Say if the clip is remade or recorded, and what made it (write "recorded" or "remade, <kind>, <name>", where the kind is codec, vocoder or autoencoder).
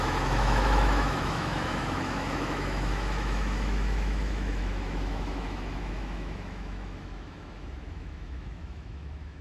remade, autoencoder, DAC-VAE